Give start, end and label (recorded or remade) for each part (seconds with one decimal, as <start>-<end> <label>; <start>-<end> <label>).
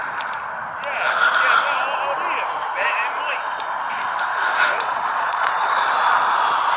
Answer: 0.0-4.3 recorded; 4.3-5.6 remade; 5.6-6.8 recorded